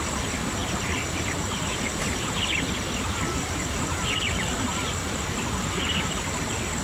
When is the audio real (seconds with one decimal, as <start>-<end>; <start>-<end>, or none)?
0.0-6.8